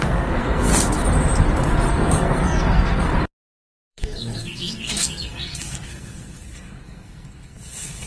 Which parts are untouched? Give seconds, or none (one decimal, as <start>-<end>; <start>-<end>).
0.7-1.9; 3.1-3.9

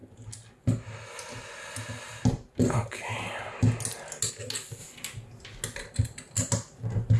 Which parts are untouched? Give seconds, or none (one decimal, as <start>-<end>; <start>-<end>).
0.0-7.2

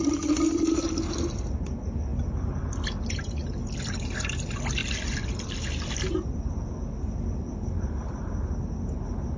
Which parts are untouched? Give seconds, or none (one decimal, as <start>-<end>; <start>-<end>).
0.0-4.8; 6.7-9.4

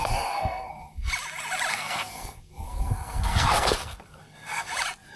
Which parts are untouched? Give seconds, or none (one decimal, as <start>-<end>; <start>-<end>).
1.1-1.7; 4.7-5.2

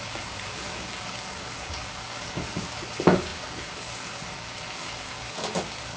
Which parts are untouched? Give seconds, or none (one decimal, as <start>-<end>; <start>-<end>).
none

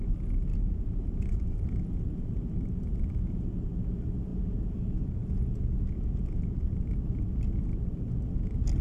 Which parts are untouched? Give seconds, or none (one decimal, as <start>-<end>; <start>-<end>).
0.0-0.5; 2.4-4.3; 6.6-8.8

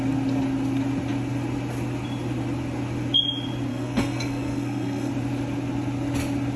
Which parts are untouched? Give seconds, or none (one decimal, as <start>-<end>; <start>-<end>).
0.0-3.7; 5.1-6.6